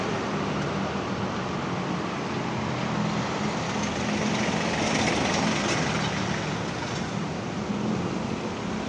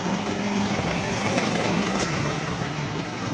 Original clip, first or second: first